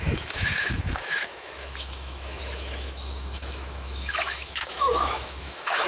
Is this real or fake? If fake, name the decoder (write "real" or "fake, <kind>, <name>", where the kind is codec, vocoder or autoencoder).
fake, autoencoder, DAC-VAE